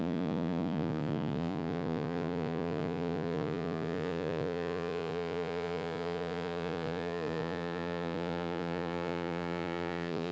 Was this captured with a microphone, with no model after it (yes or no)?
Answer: no